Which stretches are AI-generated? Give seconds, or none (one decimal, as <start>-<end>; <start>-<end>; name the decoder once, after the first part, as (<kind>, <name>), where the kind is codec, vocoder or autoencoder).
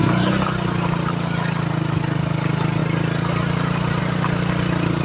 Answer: none